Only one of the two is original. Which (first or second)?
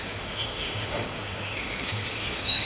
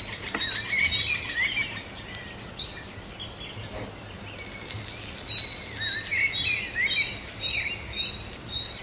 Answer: second